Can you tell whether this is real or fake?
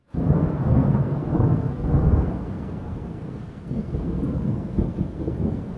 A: fake